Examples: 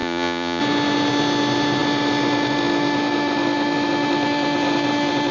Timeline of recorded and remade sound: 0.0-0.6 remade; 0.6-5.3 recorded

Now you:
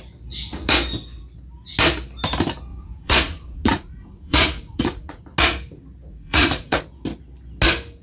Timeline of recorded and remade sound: 0.0-2.7 recorded; 2.7-5.2 remade; 5.2-6.1 recorded; 6.1-6.8 remade; 6.8-8.0 recorded